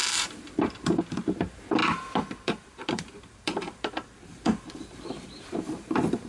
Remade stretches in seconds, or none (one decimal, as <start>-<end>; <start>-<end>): 0.0-6.3

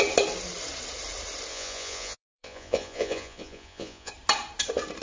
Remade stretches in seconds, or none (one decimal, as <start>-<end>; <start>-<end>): 1.5-4.1